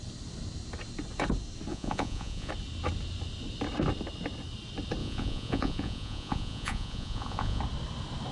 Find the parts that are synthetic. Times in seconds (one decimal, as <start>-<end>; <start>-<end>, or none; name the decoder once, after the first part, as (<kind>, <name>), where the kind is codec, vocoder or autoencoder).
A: 1.7-2.5 (vocoder, Vocos); 5.0-7.6